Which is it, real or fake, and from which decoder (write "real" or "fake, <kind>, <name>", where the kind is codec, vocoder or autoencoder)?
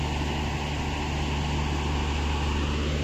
real